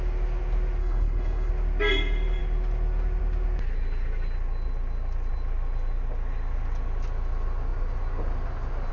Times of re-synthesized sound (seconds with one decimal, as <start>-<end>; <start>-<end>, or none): 0.8-1.5